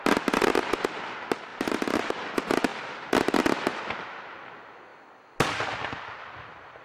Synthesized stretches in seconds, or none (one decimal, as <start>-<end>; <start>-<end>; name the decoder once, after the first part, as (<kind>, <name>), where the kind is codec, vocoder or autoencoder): 1.5-2.3 (vocoder, BigVGAN v2)